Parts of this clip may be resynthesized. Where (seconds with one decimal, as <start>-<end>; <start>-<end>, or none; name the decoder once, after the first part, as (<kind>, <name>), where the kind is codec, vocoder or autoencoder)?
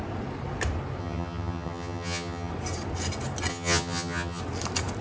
1.0-2.5 (vocoder, HiFi-GAN); 3.5-4.4